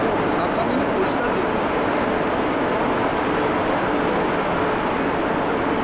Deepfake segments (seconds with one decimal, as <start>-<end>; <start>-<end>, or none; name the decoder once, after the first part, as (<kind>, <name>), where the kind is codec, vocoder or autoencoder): none